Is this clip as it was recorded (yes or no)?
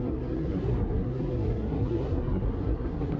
no